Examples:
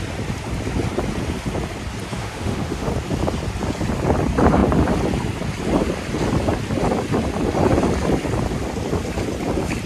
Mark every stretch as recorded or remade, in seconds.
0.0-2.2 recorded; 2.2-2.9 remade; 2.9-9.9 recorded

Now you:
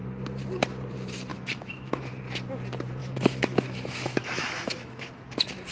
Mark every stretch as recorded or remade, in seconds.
0.0-1.3 recorded; 1.3-2.1 remade; 2.1-3.0 recorded; 3.0-5.2 remade; 5.2-5.7 recorded

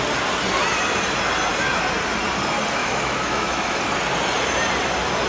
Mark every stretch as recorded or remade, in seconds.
0.0-2.8 recorded; 2.8-3.8 remade; 3.8-5.3 recorded

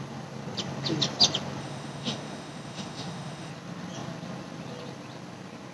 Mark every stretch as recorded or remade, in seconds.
0.0-1.6 recorded; 1.6-3.5 remade; 3.5-5.7 recorded

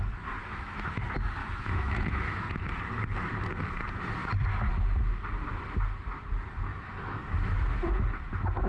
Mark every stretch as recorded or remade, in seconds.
0.0-0.4 recorded; 0.4-1.0 remade; 1.0-1.4 recorded; 1.4-2.5 remade; 2.5-6.7 recorded; 6.7-7.2 remade; 7.2-8.7 recorded